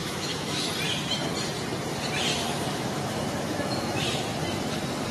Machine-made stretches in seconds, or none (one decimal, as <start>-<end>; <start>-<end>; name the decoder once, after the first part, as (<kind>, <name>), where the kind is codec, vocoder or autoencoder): 0.0-0.7 (autoencoder, DAC-VAE); 2.3-4.2